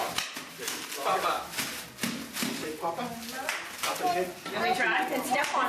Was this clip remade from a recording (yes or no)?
no